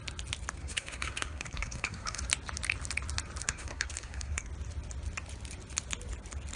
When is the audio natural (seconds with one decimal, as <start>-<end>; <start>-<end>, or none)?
0.0-0.6; 2.2-3.4; 4.5-6.6